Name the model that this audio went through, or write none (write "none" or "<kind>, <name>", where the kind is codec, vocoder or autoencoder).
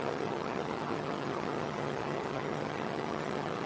vocoder, HiFi-GAN